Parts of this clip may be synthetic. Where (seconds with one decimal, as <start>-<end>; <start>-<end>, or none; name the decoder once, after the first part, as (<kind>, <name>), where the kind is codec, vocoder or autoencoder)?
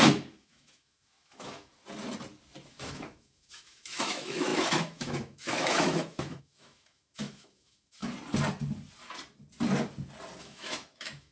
0.0-1.7 (autoencoder, DAC-VAE); 2.7-8.0; 10.4-11.3